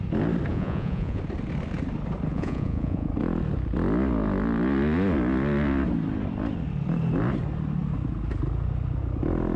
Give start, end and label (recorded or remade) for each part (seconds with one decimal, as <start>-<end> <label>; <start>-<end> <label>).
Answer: 0.0-0.5 recorded; 0.5-1.2 remade; 1.2-2.3 recorded; 2.3-3.1 remade; 3.1-9.6 recorded